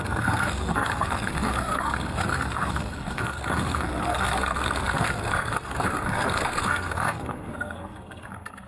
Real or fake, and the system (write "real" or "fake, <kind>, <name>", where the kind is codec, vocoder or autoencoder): fake, codec, SNAC